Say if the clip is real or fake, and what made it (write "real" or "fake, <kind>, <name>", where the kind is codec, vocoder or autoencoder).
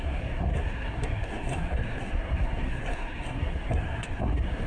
fake, codec, SNAC